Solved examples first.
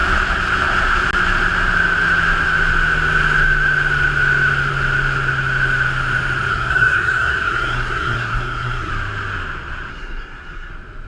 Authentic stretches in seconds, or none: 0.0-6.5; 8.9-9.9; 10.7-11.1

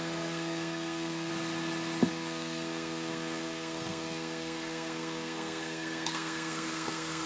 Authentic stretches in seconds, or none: 1.3-2.1

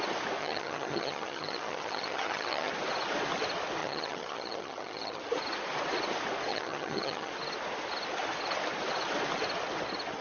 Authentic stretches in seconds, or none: 0.0-0.4; 2.7-3.8; 5.2-6.5; 7.3-10.2

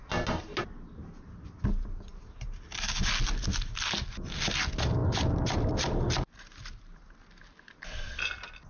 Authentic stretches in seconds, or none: 0.0-8.7